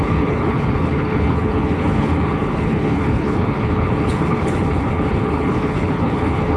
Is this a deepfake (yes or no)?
yes